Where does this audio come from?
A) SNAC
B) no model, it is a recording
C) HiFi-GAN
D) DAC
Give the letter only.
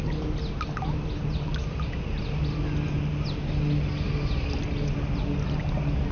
B